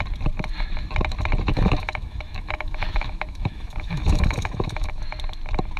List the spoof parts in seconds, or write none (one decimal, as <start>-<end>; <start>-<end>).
1.5-5.0